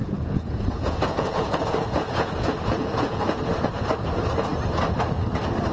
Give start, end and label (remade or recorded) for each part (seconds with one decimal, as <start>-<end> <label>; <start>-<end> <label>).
0.0-3.4 remade; 3.4-5.7 recorded